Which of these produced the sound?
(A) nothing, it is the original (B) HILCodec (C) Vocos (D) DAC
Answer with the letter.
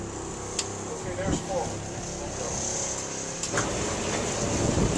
A